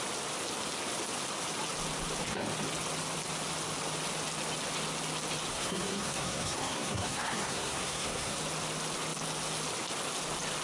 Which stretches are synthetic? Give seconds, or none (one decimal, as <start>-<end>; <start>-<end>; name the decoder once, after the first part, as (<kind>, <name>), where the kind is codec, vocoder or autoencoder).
5.5-8.4 (codec, SNAC)